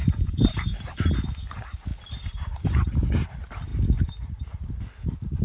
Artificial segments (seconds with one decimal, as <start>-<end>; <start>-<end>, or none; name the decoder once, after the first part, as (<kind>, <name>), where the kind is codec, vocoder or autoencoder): none

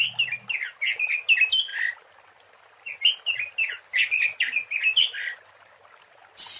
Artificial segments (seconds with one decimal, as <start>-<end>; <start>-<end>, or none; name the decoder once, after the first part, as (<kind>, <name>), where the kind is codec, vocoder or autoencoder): none